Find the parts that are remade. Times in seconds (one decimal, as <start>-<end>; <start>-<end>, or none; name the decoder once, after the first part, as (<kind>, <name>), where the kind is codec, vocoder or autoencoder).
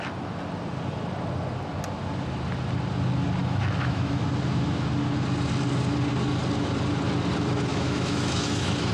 3.4-4.2 (autoencoder, DAC-VAE); 7.7-8.9